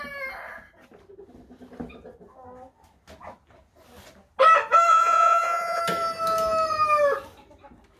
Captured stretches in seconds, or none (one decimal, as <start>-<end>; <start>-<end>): 0.0-4.9; 5.8-8.0